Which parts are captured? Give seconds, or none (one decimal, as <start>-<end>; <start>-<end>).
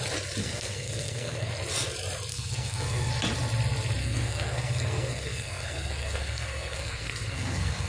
0.0-0.4; 1.5-2.3; 3.1-4.0